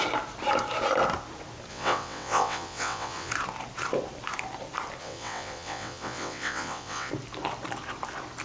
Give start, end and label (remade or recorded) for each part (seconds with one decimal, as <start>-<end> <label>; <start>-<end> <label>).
0.0-1.7 recorded; 1.7-3.3 remade; 3.3-5.0 recorded; 5.0-7.1 remade; 7.1-8.4 recorded